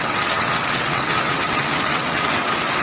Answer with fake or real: fake